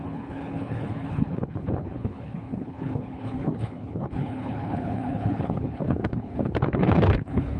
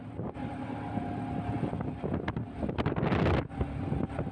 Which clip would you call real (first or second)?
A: second